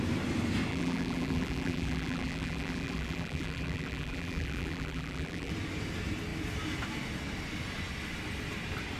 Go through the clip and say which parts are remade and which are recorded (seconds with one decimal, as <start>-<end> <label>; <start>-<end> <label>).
0.0-0.7 recorded; 0.7-5.5 remade; 5.5-9.0 recorded

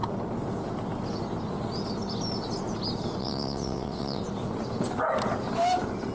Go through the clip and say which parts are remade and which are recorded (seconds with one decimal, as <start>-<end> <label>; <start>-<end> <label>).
0.0-3.2 recorded; 3.2-4.2 remade; 4.2-6.1 recorded